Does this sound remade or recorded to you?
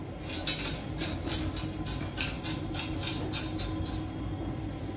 recorded